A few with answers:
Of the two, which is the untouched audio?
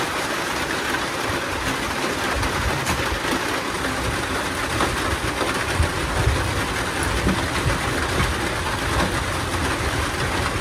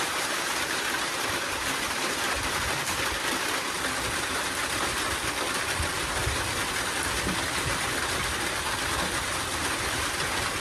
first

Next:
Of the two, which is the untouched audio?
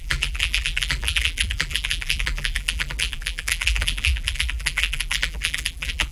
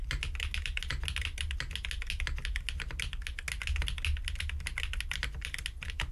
second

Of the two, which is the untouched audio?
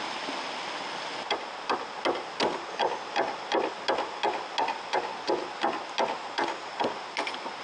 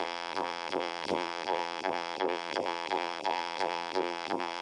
first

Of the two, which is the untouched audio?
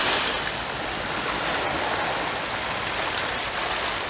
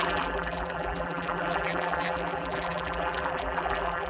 first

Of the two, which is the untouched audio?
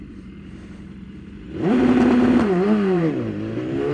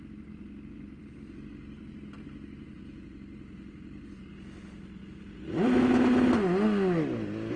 second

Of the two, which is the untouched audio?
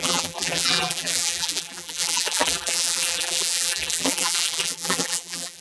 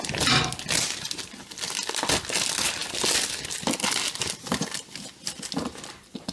second